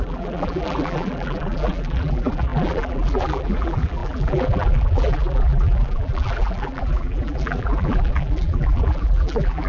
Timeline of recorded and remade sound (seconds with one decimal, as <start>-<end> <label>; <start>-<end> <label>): 0.0-9.7 remade